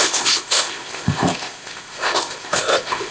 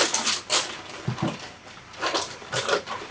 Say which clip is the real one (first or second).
second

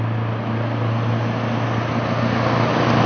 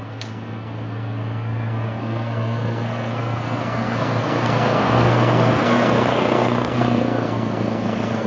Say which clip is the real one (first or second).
first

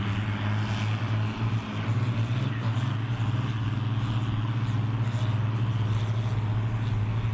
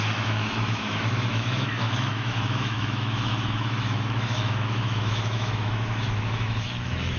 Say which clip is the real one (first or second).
first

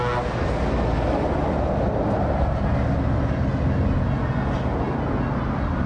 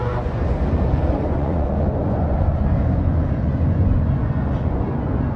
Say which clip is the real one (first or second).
first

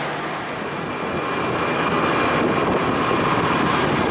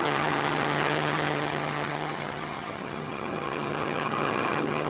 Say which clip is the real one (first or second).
first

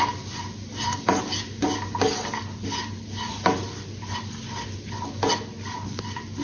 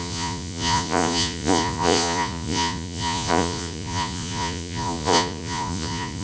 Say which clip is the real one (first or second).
first